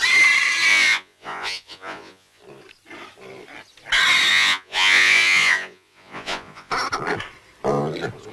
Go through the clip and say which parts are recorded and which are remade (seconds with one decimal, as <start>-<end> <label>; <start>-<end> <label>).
0.0-0.7 recorded; 0.7-2.4 remade; 2.4-4.3 recorded; 4.3-6.7 remade; 6.7-8.3 recorded